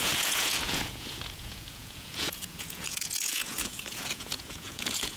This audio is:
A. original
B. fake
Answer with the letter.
B